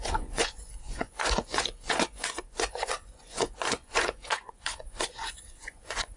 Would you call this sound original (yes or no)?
no